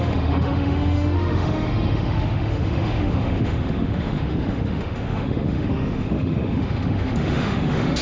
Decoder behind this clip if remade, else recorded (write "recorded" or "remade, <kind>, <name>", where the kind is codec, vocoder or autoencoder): remade, autoencoder, DAC-VAE